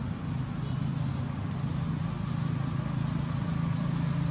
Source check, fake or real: real